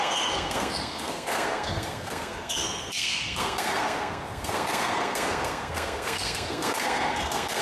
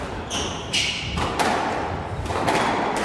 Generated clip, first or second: first